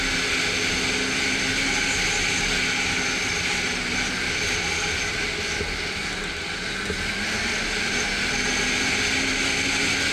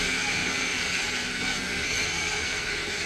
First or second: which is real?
first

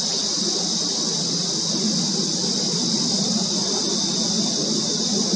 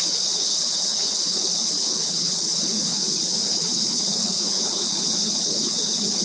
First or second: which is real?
first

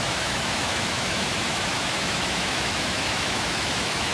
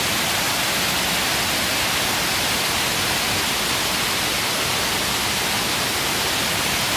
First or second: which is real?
second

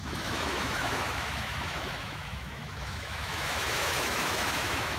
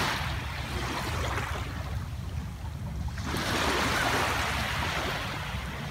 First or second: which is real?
second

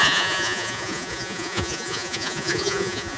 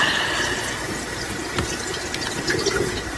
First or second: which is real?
second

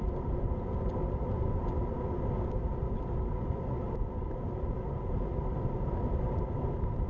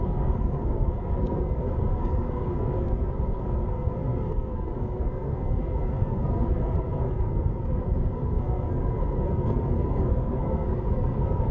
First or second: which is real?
first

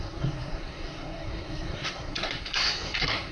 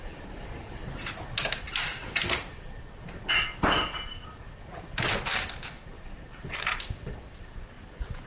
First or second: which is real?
second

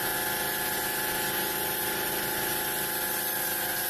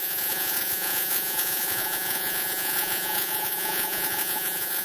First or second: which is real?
first